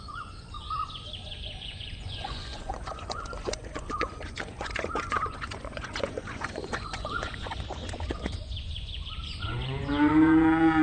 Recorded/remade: remade